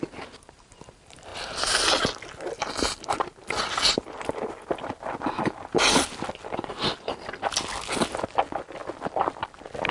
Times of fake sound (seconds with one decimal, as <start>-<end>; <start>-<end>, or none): none